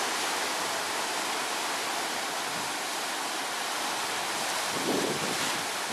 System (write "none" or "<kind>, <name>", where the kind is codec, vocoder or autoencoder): none